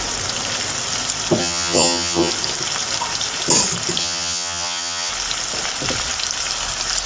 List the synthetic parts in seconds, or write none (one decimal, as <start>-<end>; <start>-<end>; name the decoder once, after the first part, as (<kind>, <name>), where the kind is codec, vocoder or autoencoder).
1.4-2.3 (vocoder, HiFi-GAN); 4.0-5.1